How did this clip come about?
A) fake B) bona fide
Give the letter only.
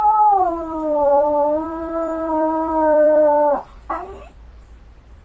A